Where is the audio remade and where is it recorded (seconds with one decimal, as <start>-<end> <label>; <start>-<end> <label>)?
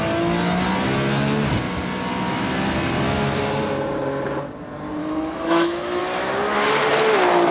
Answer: 0.0-5.0 recorded; 5.0-6.0 remade; 6.0-7.5 recorded